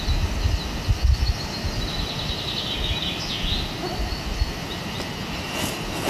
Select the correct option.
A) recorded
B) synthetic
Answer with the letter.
A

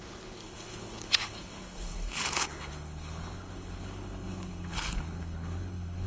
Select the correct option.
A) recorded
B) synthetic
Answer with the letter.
B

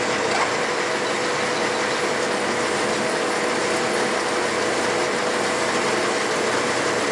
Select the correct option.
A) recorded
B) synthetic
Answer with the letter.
A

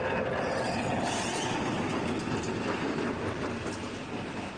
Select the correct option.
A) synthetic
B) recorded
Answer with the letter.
B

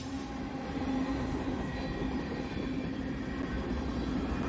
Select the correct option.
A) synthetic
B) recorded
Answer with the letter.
B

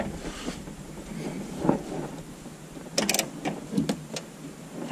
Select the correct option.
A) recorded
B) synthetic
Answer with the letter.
A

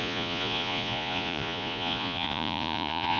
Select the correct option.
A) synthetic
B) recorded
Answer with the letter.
A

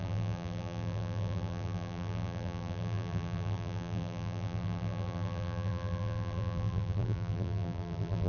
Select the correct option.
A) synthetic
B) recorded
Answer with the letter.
A